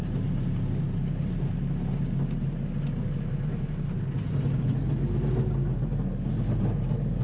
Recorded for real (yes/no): yes